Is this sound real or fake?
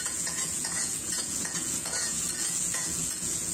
fake